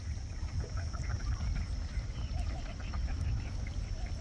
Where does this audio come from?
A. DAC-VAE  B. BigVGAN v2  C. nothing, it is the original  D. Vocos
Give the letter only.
B